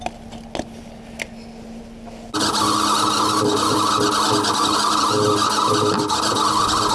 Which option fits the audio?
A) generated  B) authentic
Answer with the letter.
B